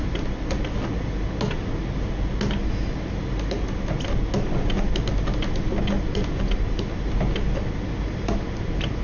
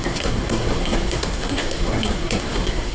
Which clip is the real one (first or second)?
first